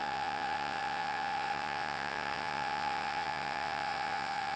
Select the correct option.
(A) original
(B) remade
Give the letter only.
B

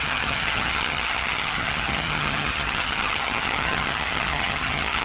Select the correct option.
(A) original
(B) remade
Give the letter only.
B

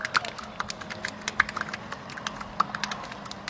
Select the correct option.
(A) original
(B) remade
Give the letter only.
A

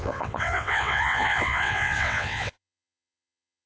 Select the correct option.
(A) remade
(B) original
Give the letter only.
A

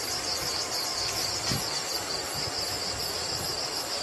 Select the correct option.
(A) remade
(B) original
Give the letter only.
B